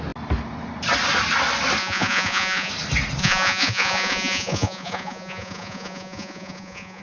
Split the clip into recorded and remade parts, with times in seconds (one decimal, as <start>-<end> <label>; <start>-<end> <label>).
0.0-1.8 recorded; 1.8-2.7 remade; 2.7-3.2 recorded; 3.2-7.0 remade